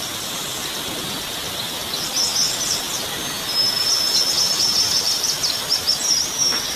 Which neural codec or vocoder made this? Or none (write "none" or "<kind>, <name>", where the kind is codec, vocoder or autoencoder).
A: none